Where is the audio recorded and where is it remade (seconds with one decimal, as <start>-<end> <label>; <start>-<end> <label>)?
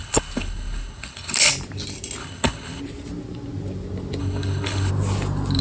0.0-1.5 remade; 1.5-2.2 recorded; 2.2-2.8 remade; 2.8-4.2 recorded; 4.2-4.9 remade; 4.9-5.6 recorded